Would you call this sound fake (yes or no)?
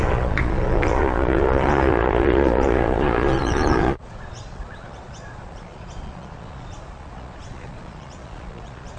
yes